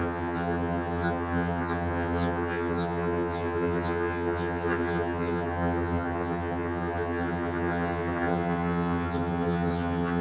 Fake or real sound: fake